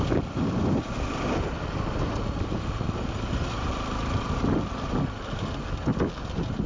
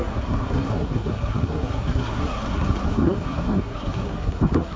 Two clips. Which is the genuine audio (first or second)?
first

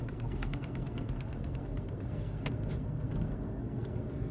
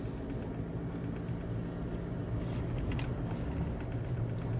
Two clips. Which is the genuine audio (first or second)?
second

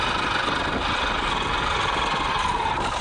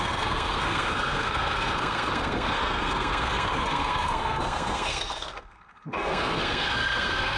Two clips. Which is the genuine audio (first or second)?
first